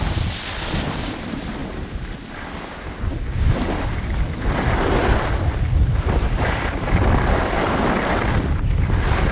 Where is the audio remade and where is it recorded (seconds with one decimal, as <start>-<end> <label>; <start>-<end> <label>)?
0.0-1.6 remade; 1.6-3.8 recorded; 3.8-5.0 remade; 5.0-8.4 recorded; 8.4-9.3 remade